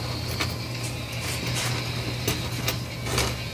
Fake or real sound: real